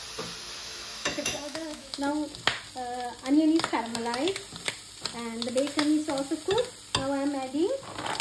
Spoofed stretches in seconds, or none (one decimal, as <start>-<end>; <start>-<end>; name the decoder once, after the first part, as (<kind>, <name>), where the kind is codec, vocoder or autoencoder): 0.6-2.1 (autoencoder, DAC-VAE)